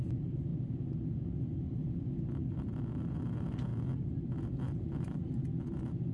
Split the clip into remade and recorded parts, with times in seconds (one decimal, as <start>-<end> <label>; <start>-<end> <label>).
0.0-6.1 recorded